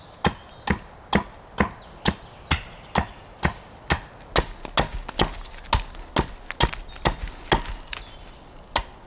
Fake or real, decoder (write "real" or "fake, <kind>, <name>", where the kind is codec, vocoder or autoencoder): real